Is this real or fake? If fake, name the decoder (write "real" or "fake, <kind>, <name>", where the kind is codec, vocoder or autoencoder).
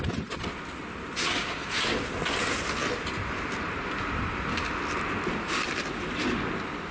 real